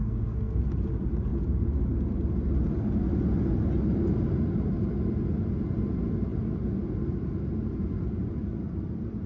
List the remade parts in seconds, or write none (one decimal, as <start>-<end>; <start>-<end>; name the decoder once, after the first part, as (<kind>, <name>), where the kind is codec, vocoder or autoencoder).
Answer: 0.0-0.6 (codec, SNAC)